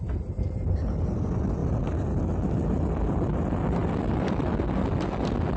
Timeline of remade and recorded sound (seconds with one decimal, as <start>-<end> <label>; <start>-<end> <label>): 0.0-5.6 recorded